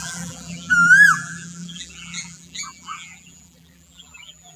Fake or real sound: fake